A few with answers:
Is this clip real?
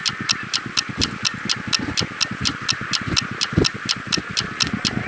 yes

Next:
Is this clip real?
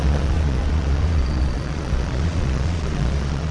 no